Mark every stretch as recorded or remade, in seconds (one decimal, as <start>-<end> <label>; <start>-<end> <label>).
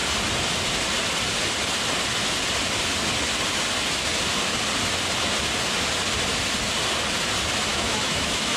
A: 0.0-7.7 recorded; 7.7-8.6 remade